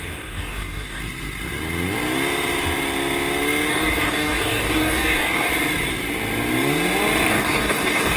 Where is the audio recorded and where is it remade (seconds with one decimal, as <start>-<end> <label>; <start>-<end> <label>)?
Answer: 0.0-1.0 remade; 1.0-3.7 recorded; 3.7-5.5 remade; 5.5-7.3 recorded; 7.3-8.2 remade